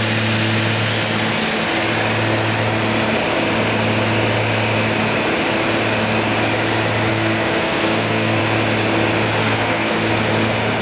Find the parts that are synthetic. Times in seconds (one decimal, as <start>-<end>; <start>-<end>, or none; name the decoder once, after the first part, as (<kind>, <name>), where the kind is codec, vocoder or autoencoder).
7.1-8.4 (codec, SNAC); 9.4-10.1

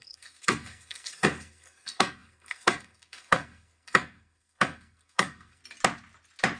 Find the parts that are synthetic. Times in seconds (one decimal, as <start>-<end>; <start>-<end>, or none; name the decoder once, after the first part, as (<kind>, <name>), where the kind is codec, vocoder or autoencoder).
0.0-5.6 (codec, SNAC)

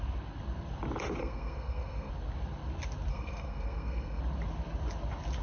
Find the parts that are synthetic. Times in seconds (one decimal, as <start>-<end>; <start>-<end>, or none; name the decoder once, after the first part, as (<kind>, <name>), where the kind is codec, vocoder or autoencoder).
1.2-2.1 (codec, SNAC); 3.1-4.2

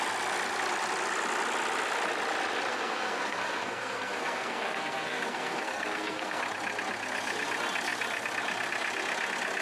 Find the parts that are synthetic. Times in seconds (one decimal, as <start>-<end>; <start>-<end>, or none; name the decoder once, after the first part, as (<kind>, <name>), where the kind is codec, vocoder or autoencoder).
2.7-6.4 (codec, SNAC)

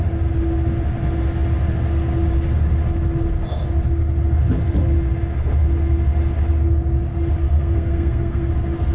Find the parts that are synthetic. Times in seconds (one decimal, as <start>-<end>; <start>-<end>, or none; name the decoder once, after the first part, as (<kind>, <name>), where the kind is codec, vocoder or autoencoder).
7.4-8.5 (codec, SNAC)